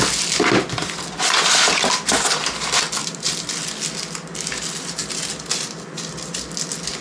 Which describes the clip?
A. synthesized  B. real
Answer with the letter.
B